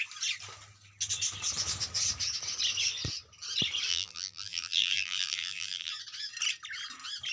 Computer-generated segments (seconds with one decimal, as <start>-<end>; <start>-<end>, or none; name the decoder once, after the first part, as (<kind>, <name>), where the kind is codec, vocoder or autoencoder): 3.9-5.9 (vocoder, BigVGAN v2)